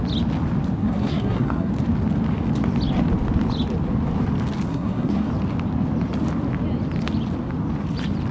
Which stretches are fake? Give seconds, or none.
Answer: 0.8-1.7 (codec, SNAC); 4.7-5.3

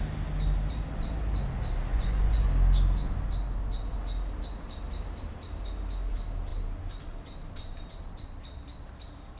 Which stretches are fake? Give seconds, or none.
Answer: 1.9-2.5 (vocoder, Vocos)

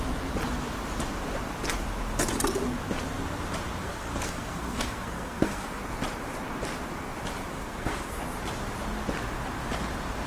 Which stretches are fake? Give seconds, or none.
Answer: 3.8-5.8 (codec, SNAC); 7.5-8.2

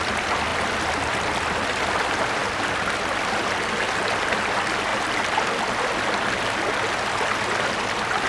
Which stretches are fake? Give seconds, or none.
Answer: none

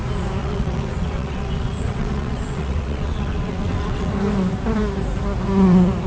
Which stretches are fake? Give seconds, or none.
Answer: 0.4-4.1 (vocoder, WaveNeXt)

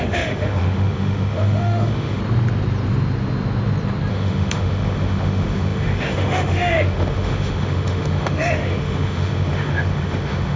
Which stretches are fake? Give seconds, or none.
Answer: 0.0-2.2 (autoencoder, DAC-VAE); 4.1-10.6